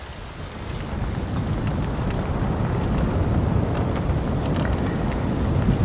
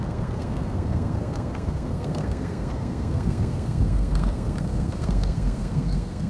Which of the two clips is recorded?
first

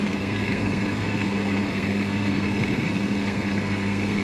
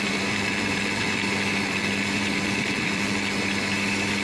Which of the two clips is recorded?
second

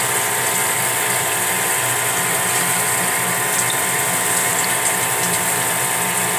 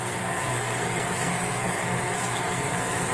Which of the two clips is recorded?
first